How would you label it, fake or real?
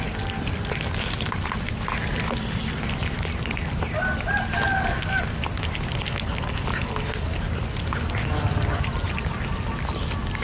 real